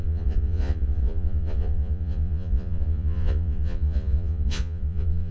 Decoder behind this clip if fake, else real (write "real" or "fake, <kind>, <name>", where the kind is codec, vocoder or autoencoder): fake, vocoder, Vocos